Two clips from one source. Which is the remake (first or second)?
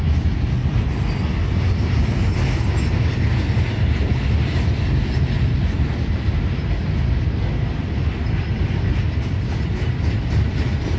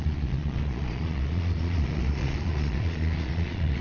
second